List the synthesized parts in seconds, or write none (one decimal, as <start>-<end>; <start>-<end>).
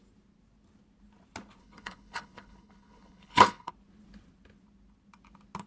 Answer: 1.6-3.7